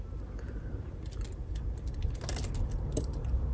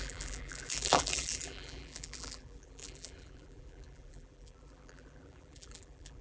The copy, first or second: second